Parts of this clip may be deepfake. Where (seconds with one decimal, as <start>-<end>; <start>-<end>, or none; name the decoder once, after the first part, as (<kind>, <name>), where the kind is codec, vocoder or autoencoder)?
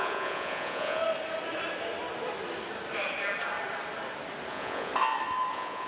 0.0-1.0 (vocoder, Vocos); 4.5-4.9; 5.5-5.9